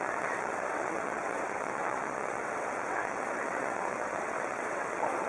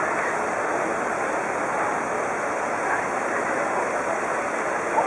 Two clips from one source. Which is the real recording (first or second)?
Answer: second